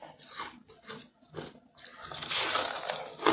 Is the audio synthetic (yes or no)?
no